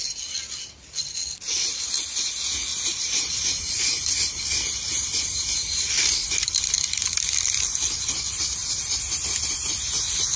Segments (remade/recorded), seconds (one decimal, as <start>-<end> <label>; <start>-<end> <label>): 0.0-2.7 recorded; 2.7-6.6 remade; 6.6-8.6 recorded; 8.6-9.1 remade; 9.1-9.5 recorded; 9.5-10.4 remade